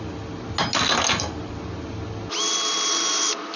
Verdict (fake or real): real